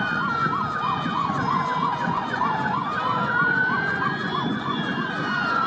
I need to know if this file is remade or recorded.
remade